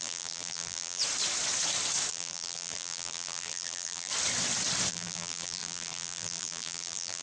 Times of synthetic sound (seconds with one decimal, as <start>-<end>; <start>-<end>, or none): 0.0-1.0; 2.1-4.1; 4.9-7.2